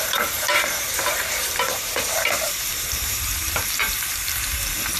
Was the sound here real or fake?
fake